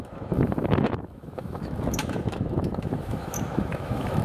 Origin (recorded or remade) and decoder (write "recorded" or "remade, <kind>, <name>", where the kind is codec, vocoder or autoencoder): remade, autoencoder, DAC-VAE